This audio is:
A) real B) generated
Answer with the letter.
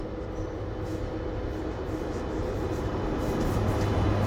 A